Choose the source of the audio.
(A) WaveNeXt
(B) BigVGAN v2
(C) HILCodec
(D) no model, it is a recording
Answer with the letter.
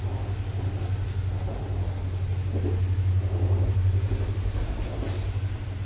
D